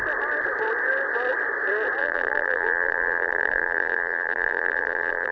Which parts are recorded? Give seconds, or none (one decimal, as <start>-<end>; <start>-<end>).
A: 0.0-2.0

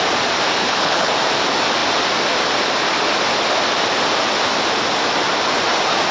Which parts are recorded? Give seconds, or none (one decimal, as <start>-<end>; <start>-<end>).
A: 0.0-0.6; 1.1-6.1

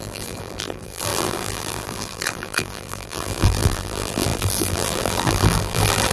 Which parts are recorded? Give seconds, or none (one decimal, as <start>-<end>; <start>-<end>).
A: none